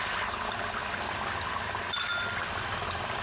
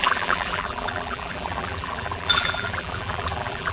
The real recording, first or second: first